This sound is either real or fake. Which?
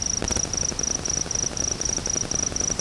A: real